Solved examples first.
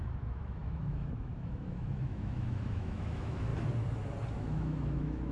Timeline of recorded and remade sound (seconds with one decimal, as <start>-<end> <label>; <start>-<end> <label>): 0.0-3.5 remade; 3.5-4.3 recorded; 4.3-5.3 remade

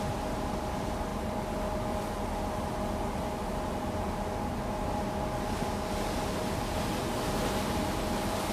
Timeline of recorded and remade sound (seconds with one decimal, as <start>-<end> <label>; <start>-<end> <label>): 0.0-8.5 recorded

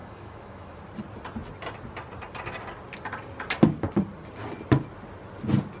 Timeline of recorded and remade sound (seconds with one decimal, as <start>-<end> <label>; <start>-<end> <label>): 0.0-0.8 remade; 0.8-5.8 recorded

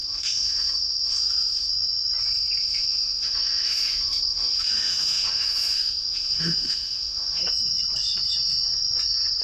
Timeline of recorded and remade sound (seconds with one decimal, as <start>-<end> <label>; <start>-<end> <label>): 0.0-1.7 remade; 1.7-2.6 recorded; 2.6-7.4 remade; 7.4-9.4 recorded

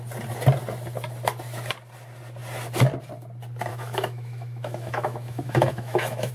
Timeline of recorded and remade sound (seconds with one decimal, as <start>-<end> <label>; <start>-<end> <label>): 0.0-3.7 recorded; 3.7-6.3 remade

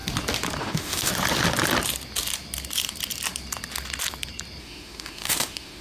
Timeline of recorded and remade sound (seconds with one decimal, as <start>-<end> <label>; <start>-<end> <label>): 0.0-0.6 recorded; 0.6-1.1 remade; 1.1-4.6 recorded; 4.6-5.8 remade

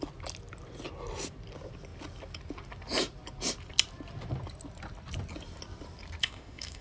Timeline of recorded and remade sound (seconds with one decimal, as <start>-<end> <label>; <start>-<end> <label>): 0.0-6.2 recorded; 6.2-6.8 remade